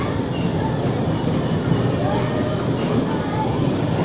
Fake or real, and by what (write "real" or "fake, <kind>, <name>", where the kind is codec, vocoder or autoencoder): real